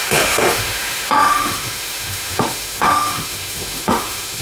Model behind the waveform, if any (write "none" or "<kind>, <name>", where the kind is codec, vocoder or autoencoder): autoencoder, DAC-VAE